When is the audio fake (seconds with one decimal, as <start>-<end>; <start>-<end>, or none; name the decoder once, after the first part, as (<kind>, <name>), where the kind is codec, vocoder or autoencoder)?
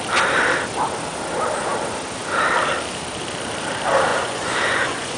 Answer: 4.1-5.2 (vocoder, Vocos)